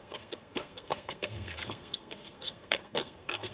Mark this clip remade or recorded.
remade